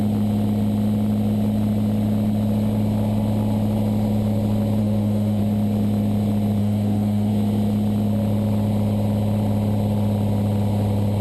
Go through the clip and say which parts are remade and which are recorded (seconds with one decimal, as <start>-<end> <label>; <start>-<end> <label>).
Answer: 0.0-4.8 recorded; 4.8-5.4 remade; 5.4-6.6 recorded; 6.6-7.3 remade; 7.3-11.2 recorded